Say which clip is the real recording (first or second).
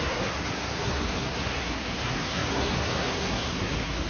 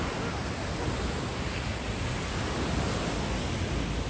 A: second